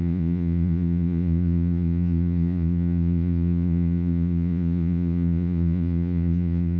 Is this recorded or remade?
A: remade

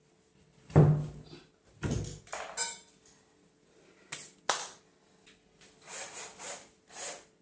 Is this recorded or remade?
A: recorded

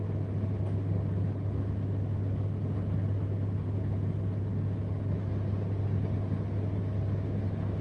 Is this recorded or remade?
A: recorded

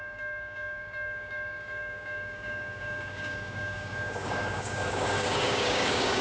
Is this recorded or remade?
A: remade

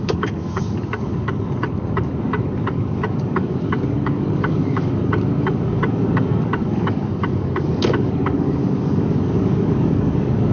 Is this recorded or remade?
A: remade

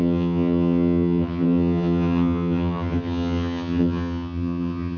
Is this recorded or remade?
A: remade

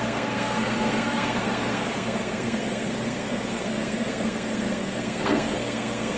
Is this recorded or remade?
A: remade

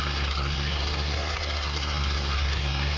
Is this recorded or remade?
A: remade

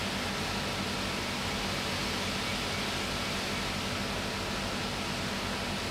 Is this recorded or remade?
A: recorded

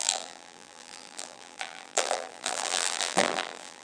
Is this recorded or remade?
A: remade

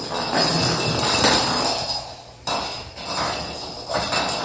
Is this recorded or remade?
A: recorded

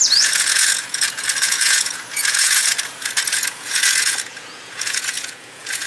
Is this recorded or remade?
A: remade